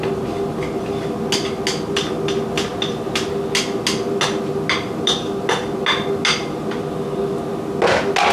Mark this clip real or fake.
real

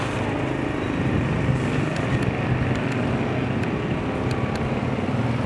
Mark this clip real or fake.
real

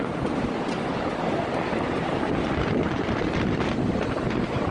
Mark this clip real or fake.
real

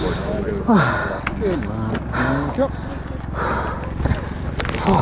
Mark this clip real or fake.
real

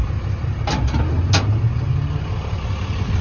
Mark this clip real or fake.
real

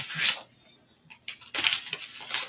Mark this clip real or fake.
real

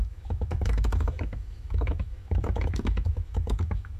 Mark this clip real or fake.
fake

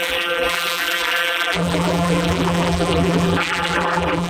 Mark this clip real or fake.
fake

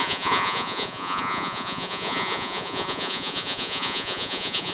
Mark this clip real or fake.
fake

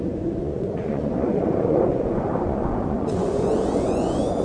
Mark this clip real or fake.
fake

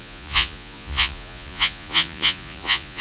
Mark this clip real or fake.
fake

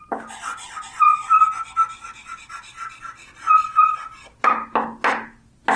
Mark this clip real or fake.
real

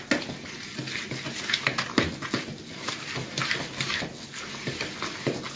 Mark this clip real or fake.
real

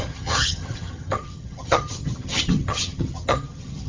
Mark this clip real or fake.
fake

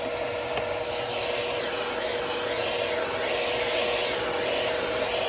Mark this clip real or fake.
real